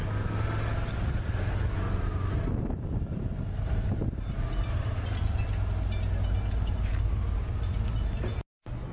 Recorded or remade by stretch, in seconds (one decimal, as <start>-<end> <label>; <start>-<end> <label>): 0.0-8.9 recorded